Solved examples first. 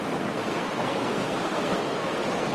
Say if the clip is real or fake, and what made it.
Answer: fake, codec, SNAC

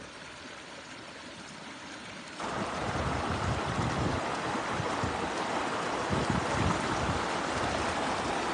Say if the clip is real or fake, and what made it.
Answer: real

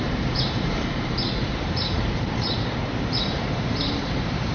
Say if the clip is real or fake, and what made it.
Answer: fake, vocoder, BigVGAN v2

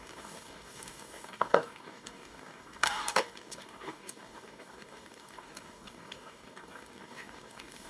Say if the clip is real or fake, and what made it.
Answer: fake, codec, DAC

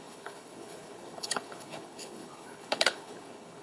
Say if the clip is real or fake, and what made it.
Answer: fake, codec, HILCodec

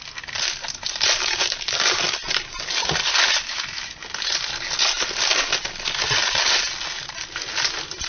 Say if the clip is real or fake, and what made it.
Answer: real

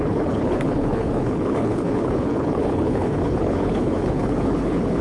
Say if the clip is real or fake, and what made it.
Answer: fake, codec, HILCodec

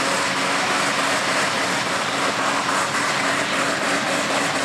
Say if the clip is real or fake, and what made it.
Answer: real